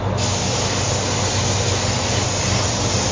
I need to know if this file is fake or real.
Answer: real